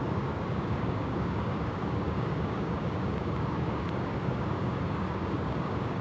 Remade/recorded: remade